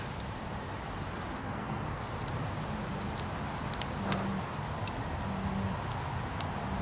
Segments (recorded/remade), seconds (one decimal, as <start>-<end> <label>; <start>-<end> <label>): 0.0-1.4 recorded; 1.4-2.0 remade; 2.0-6.8 recorded